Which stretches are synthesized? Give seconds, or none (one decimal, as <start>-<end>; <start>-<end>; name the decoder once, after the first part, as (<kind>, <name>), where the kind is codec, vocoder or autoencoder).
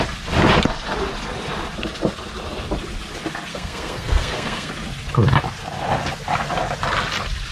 3.5-4.7 (codec, SNAC)